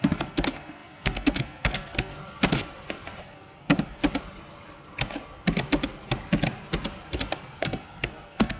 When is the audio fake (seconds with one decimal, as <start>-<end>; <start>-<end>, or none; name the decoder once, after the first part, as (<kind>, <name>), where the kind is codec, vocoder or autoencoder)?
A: 0.0-2.1 (codec, SNAC); 3.2-4.0; 7.6-8.6